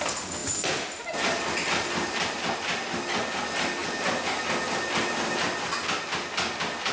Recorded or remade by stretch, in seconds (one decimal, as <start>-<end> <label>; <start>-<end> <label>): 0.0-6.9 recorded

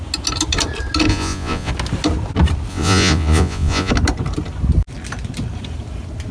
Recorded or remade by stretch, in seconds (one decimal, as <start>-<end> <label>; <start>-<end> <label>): 0.0-1.1 recorded; 1.1-1.7 remade; 1.7-2.7 recorded; 2.7-3.9 remade; 3.9-6.3 recorded

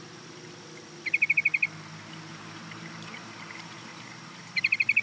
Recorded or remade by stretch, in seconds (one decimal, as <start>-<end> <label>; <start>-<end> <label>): 0.0-2.3 recorded; 2.3-4.6 remade; 4.6-5.0 recorded

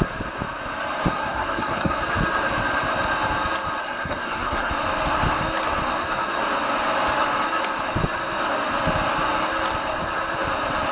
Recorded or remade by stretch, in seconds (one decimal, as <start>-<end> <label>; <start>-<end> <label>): 0.0-1.1 recorded; 1.1-2.0 remade; 2.0-3.8 recorded; 3.8-4.7 remade; 4.7-10.9 recorded

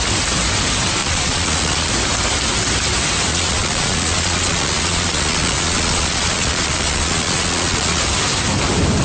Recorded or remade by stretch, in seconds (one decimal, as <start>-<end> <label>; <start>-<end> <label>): 0.0-1.0 recorded; 1.0-1.9 remade; 1.9-3.3 recorded; 3.3-8.0 remade; 8.0-9.0 recorded